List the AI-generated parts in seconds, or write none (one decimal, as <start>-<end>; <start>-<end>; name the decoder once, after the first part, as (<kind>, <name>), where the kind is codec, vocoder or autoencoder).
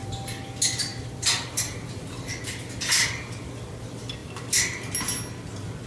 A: 0.9-2.4 (vocoder, BigVGAN v2)